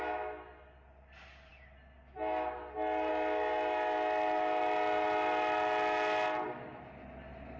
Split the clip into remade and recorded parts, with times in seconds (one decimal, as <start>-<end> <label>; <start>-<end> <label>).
0.0-7.6 recorded